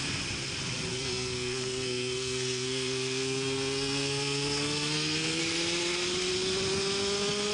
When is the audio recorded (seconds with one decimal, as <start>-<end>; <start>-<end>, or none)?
0.0-0.9; 5.4-7.5

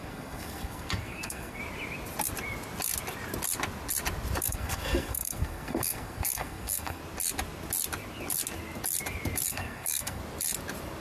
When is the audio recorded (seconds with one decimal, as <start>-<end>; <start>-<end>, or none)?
1.6-4.4; 7.0-9.5; 10.2-11.0

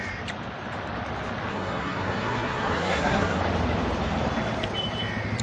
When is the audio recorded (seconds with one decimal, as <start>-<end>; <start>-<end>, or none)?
0.0-1.5; 3.4-5.4

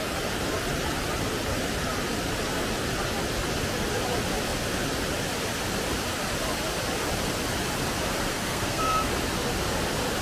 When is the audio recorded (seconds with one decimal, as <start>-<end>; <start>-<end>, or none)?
0.0-8.3; 9.1-10.2

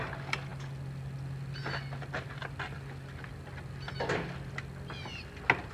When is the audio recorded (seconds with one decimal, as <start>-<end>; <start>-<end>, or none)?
0.0-5.7

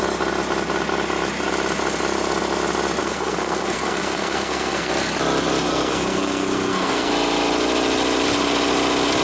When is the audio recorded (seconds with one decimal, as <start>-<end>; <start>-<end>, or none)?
0.0-3.0; 4.9-5.7; 7.1-9.2